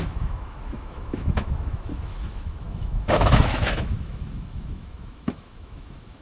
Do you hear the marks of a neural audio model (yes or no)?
yes